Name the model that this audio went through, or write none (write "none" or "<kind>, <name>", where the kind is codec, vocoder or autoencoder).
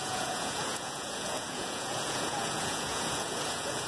vocoder, Vocos